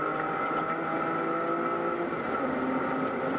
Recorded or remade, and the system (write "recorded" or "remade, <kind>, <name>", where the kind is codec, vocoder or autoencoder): recorded